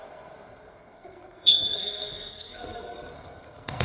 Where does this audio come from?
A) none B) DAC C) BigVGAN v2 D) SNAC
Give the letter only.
D